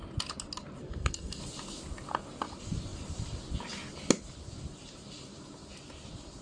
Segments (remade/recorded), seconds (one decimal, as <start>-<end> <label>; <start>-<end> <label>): 0.0-0.8 recorded; 0.8-1.4 remade; 1.4-6.4 recorded